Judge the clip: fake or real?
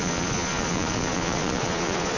fake